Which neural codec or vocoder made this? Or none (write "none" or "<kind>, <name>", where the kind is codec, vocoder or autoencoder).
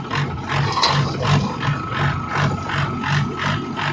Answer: none